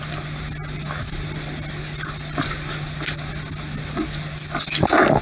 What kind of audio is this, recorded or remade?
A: recorded